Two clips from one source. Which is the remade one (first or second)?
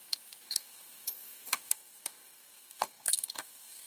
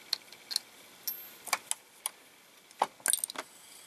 first